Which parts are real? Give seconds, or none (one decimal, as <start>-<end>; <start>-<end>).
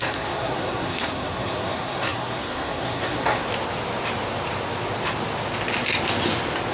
3.5-6.7